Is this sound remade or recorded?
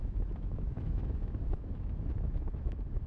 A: remade